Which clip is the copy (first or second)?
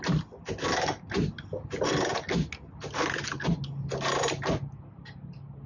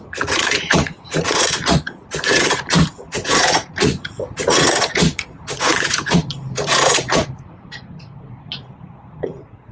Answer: second